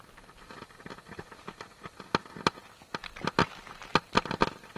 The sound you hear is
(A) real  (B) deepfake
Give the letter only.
A